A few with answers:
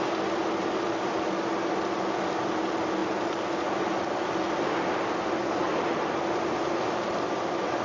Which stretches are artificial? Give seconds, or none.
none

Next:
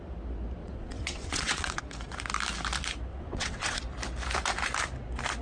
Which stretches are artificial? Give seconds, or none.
0.6-1.8 (vocoder, WaveNeXt); 3.1-3.8

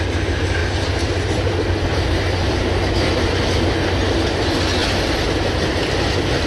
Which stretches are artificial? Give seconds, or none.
0.6-1.5 (vocoder, BigVGAN v2); 1.9-3.1

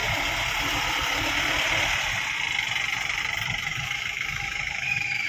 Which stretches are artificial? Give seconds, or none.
3.7-5.3 (autoencoder, DAC-VAE)